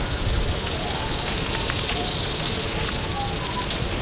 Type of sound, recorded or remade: recorded